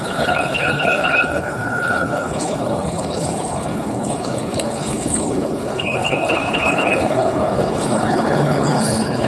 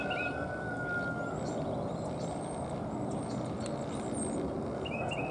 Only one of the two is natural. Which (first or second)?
second